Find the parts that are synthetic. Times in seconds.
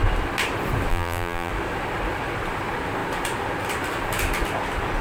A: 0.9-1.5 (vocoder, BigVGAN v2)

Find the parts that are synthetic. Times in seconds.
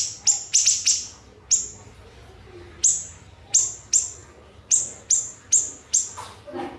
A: none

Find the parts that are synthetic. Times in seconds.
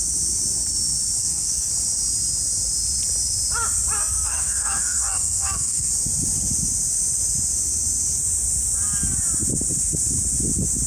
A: 1.2-1.7 (codec, SNAC); 4.0-5.9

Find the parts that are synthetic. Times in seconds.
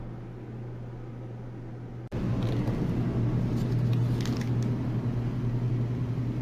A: none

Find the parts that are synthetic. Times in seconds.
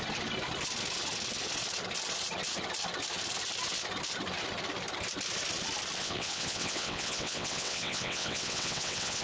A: 6.0-9.2 (vocoder, WaveNeXt)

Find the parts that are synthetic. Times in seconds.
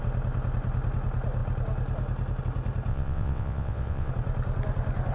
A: 2.9-4.1 (vocoder, WaveNeXt)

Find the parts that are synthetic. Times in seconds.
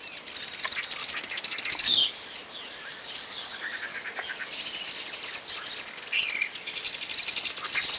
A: 1.0-2.3 (codec, DAC); 2.9-3.5; 3.9-4.5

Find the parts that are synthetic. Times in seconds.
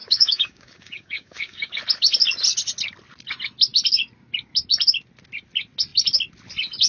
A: 0.0-1.8 (codec, DAC)